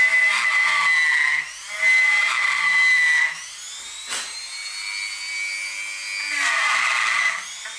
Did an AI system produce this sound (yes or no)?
no